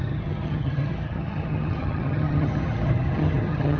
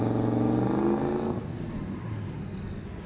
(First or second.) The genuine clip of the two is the second